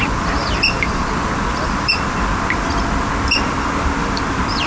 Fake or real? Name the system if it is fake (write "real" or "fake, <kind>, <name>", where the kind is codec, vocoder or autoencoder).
fake, vocoder, BigVGAN v2